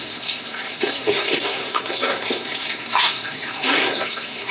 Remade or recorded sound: remade